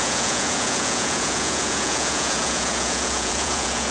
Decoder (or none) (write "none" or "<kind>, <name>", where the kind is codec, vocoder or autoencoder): vocoder, Vocos